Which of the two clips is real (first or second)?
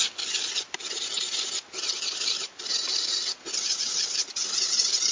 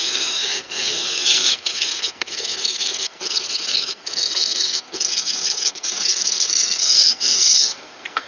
first